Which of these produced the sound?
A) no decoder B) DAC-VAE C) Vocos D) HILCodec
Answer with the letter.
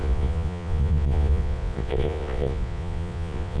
C